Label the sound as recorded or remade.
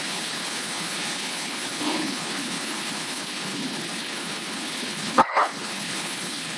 remade